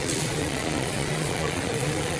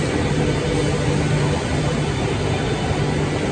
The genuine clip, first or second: second